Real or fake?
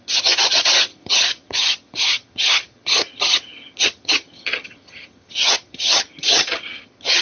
fake